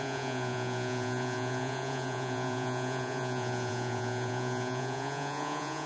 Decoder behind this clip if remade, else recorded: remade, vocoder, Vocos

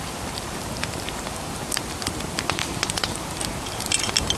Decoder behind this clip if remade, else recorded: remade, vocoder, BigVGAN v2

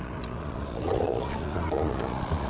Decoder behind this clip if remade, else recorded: remade, vocoder, Vocos